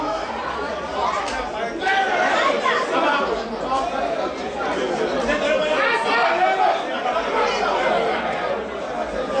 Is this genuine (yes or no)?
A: yes